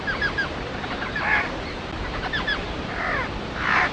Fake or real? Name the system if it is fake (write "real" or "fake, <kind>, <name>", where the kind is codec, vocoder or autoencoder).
fake, vocoder, BigVGAN v2